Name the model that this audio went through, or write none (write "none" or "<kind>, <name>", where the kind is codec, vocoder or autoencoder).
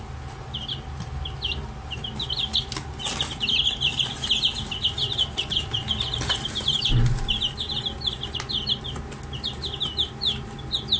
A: none